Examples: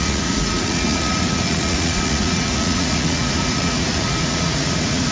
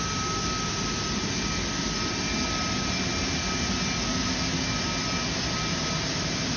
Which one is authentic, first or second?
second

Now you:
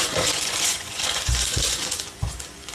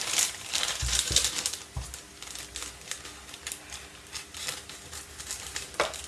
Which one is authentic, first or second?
second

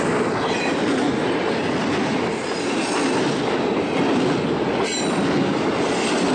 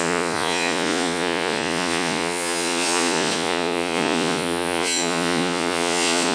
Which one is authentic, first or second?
first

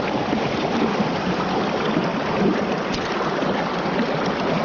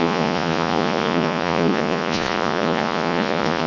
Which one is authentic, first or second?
first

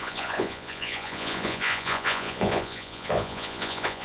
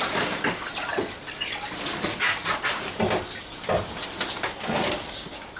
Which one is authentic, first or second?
second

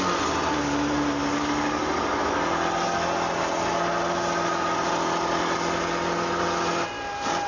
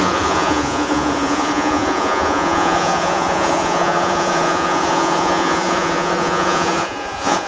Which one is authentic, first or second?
first